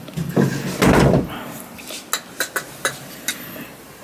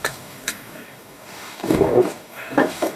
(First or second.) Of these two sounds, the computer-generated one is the second